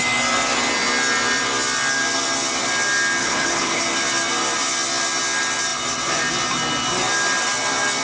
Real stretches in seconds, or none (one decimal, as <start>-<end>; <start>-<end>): 0.0-3.2; 3.8-8.0